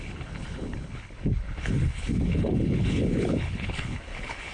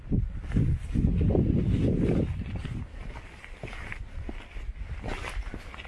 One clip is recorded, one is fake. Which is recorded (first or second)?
second